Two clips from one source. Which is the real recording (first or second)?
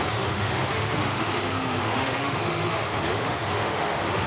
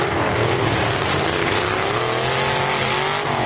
second